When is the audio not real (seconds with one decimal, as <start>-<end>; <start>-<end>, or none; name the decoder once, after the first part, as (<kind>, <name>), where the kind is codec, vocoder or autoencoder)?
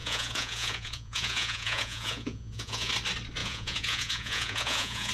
0.0-2.9 (vocoder, Vocos); 3.4-5.1